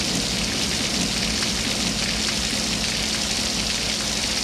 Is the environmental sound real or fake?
real